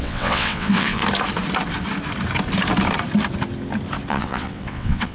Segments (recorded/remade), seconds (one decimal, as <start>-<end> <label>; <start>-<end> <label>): 0.0-1.0 remade; 1.0-4.1 recorded; 4.1-5.1 remade